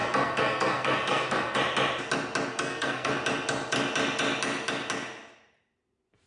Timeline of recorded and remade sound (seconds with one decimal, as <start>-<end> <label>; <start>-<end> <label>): 0.0-1.6 remade; 1.6-2.5 recorded; 2.5-3.1 remade; 3.1-6.3 recorded